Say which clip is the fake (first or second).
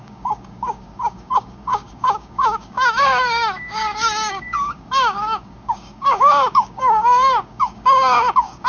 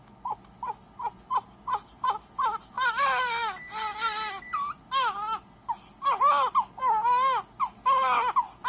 first